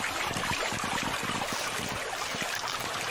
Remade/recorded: recorded